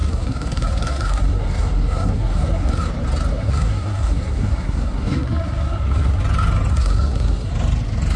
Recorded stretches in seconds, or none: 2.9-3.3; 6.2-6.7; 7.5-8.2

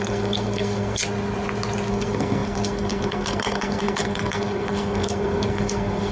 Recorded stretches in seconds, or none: 1.0-1.9